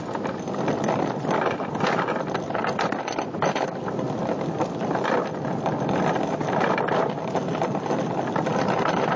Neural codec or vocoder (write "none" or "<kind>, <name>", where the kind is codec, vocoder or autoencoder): none